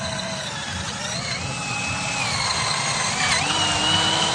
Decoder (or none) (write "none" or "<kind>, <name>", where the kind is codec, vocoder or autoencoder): none